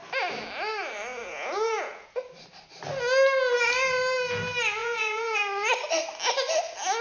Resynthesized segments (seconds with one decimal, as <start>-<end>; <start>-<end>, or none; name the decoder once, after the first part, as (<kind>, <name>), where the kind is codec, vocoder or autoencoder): 1.1-2.2 (vocoder, Vocos); 4.8-5.4